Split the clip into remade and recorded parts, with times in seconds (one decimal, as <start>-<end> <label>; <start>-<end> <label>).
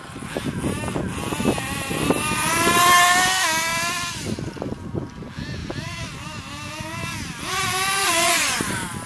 0.0-8.0 recorded; 8.0-8.6 remade; 8.6-9.1 recorded